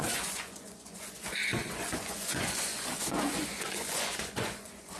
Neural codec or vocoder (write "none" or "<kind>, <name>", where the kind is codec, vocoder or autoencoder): vocoder, Vocos